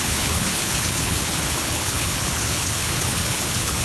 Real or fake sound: fake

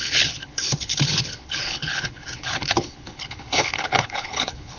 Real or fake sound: fake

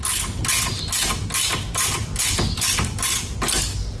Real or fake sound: real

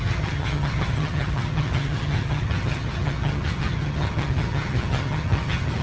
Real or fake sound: fake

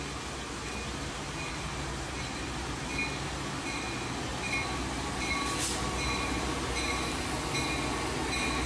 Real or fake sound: real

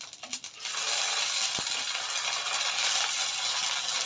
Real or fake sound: real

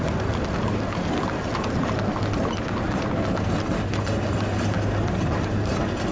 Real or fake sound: real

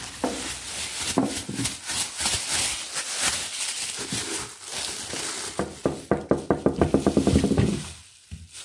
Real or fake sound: real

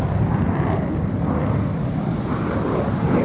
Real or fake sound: real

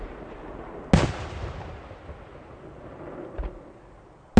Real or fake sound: real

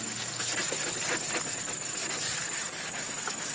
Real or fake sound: real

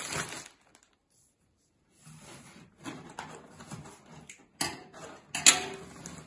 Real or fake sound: real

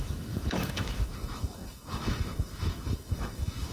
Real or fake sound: fake